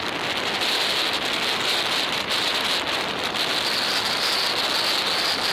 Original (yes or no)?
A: yes